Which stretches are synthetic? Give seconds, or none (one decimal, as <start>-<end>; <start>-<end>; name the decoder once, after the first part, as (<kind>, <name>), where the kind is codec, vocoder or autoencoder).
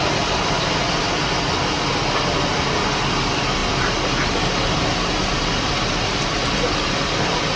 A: none